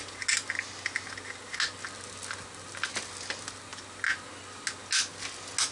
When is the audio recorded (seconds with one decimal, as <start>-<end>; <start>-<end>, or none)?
0.0-5.7